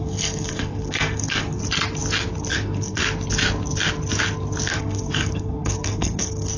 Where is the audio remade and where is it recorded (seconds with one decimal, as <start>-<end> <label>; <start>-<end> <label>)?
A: 0.0-1.6 remade; 1.6-2.5 recorded; 2.5-3.0 remade; 3.0-4.7 recorded; 4.7-6.6 remade